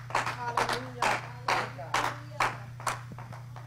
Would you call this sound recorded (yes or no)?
yes